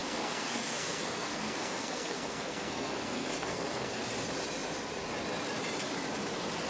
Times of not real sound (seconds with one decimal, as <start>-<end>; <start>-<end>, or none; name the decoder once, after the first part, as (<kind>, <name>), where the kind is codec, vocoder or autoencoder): 0.0-4.0 (codec, SNAC)